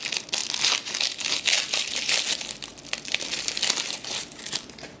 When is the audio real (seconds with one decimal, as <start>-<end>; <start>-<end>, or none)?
0.0-5.0